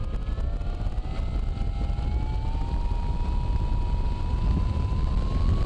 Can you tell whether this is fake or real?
real